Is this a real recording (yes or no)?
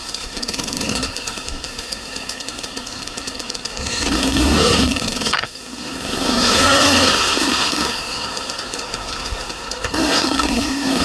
no